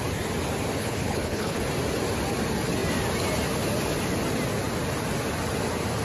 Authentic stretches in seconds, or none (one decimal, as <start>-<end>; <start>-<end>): 0.0-0.8; 1.6-6.0